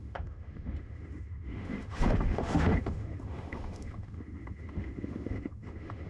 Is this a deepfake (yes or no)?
yes